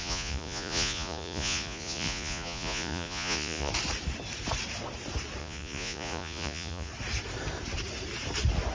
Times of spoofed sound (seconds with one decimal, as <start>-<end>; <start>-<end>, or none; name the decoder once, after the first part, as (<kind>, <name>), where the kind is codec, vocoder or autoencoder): 0.0-3.7 (vocoder, Vocos); 5.4-6.9